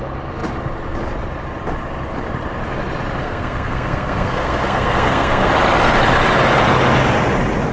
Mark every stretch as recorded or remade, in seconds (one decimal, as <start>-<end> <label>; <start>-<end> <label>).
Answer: 0.0-3.2 recorded; 3.2-5.5 remade; 5.5-7.7 recorded